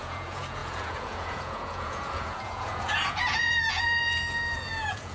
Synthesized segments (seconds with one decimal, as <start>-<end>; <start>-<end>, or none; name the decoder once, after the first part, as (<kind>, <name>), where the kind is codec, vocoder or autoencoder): 0.0-5.1 (vocoder, Vocos)

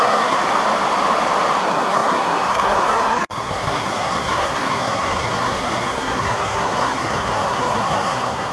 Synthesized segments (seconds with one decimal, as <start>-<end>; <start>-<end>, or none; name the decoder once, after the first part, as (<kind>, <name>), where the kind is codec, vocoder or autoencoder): 0.0-0.4 (codec, SNAC); 1.6-8.5

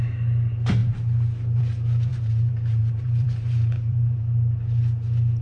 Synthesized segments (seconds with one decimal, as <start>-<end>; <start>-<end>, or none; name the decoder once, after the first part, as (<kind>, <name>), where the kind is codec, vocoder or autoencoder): 2.1-4.2 (vocoder, BigVGAN v2)

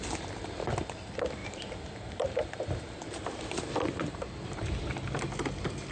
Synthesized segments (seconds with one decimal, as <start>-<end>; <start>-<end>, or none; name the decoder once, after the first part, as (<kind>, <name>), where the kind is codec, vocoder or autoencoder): 1.4-4.5 (vocoder, BigVGAN v2)

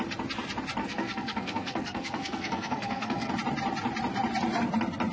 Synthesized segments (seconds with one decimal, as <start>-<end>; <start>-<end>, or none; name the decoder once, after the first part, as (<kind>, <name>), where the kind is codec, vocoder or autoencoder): 0.8-3.3 (codec, SNAC)

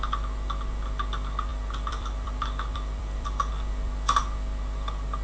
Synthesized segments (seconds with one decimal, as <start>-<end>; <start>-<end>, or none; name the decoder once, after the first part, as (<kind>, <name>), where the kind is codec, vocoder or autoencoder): 1.5-3.5 (vocoder, BigVGAN v2)